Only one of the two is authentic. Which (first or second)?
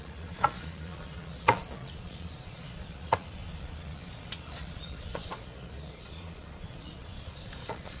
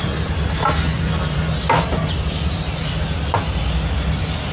second